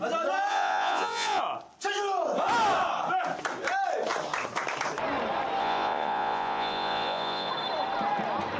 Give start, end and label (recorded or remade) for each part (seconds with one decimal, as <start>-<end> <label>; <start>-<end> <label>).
0.0-0.5 recorded; 0.5-1.4 remade; 1.4-5.6 recorded; 5.6-7.5 remade; 7.5-8.6 recorded